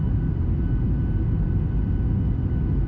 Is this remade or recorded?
recorded